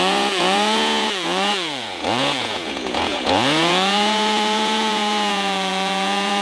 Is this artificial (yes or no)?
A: yes